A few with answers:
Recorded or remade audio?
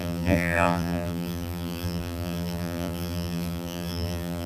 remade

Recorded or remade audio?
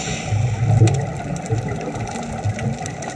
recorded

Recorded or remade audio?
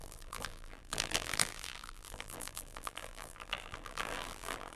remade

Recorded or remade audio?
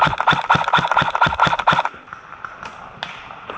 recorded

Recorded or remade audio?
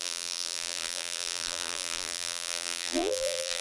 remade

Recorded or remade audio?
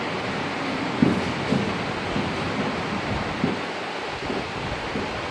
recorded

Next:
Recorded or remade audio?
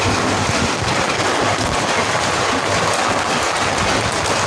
recorded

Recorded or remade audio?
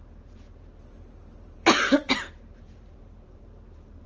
remade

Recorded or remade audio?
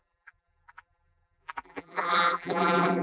remade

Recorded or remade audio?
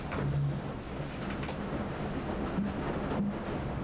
recorded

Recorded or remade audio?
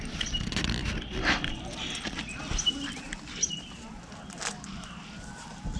recorded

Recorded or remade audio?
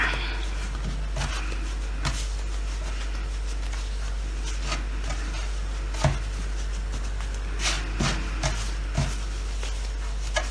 recorded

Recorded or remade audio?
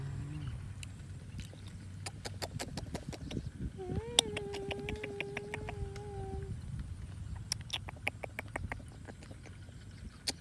recorded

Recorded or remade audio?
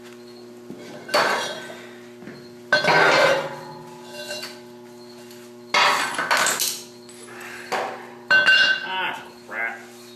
recorded